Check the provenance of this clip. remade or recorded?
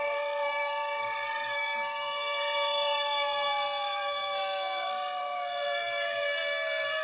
remade